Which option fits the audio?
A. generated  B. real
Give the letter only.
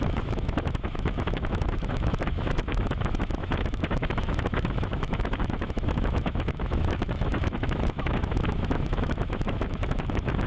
A